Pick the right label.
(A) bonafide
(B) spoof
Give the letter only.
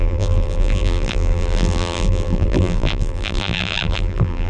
B